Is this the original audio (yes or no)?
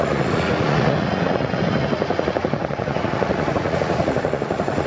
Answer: no